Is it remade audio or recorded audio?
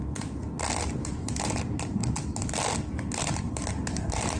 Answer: recorded